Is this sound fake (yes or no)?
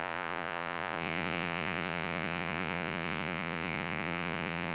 yes